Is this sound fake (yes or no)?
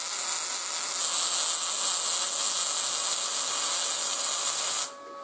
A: no